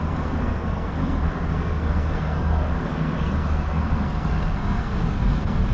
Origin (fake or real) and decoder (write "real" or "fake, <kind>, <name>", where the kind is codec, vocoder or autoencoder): fake, codec, SNAC